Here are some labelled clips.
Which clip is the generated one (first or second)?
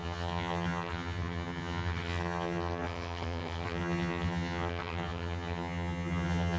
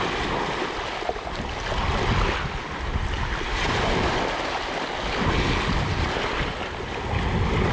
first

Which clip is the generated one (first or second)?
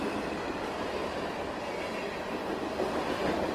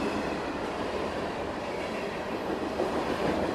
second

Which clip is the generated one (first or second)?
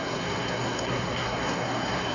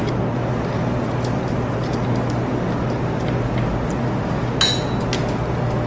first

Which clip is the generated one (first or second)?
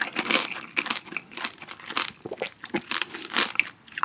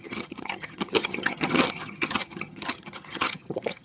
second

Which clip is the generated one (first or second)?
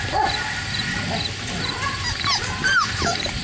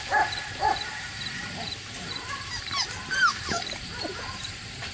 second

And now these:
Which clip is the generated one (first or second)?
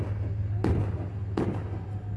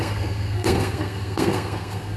second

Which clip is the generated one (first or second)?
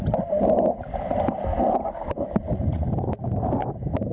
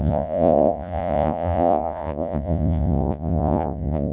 second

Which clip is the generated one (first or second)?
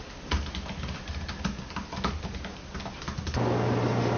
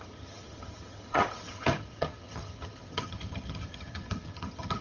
second